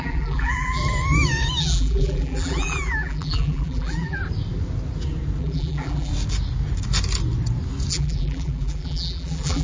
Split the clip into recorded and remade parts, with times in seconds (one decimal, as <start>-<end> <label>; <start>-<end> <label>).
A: 0.0-0.8 remade; 0.8-1.6 recorded; 1.6-4.2 remade; 4.2-5.4 recorded; 5.4-6.1 remade; 6.1-7.9 recorded; 7.9-9.6 remade

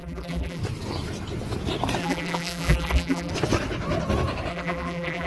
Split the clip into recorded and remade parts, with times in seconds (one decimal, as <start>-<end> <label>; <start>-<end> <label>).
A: 0.0-0.6 remade; 0.6-2.0 recorded; 2.0-3.3 remade; 3.3-4.5 recorded; 4.5-5.3 remade